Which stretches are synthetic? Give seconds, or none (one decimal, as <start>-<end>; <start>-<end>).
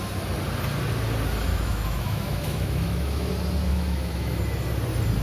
1.5-3.3; 3.7-4.4